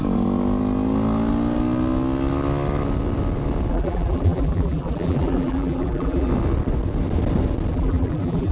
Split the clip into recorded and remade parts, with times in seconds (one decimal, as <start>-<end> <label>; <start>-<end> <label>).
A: 0.0-3.7 recorded; 3.7-6.3 remade; 6.3-7.7 recorded; 7.7-8.5 remade